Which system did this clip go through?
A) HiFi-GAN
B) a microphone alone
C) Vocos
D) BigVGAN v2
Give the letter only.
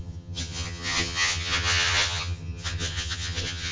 A